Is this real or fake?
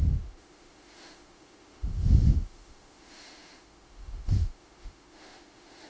fake